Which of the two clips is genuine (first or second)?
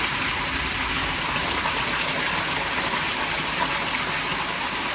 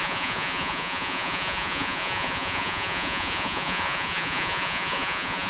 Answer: first